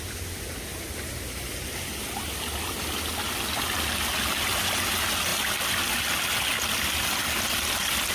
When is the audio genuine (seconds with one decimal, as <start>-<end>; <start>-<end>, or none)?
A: 0.0-8.1